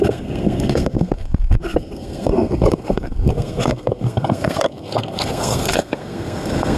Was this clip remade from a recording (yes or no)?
yes